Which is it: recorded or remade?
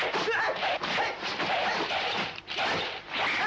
recorded